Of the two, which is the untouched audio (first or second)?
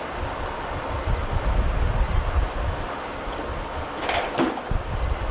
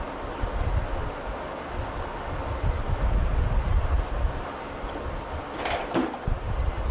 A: second